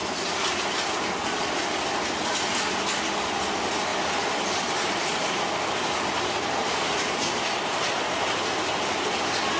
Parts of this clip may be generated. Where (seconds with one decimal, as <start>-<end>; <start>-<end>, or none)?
0.0-0.5; 3.9-6.3